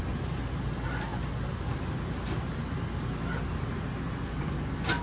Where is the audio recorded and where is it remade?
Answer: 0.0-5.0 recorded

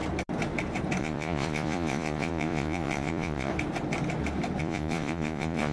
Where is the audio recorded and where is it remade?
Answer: 0.0-1.0 recorded; 1.0-3.5 remade; 3.5-4.6 recorded; 4.6-5.7 remade